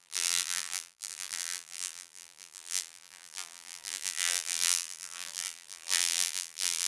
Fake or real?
fake